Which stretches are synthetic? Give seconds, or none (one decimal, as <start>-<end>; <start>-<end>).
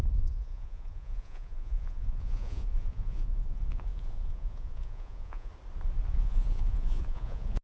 0.0-5.5; 6.1-7.6